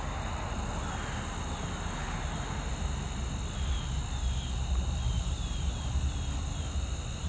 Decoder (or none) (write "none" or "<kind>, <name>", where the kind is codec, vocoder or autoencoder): none